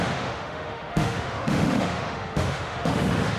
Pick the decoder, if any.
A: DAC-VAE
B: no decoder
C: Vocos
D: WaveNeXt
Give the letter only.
A